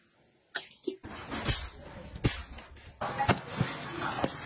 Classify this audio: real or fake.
real